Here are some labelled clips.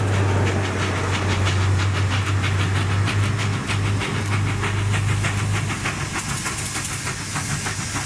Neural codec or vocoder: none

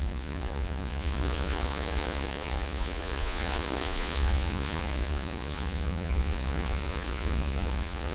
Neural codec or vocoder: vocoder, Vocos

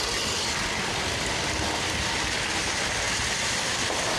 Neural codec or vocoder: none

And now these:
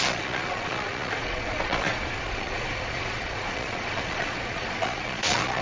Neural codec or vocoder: vocoder, Vocos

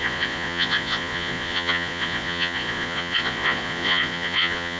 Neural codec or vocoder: vocoder, Vocos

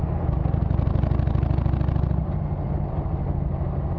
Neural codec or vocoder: none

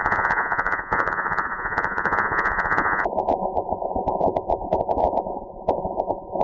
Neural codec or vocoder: vocoder, Vocos